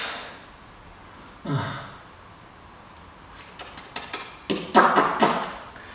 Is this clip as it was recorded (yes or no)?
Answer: yes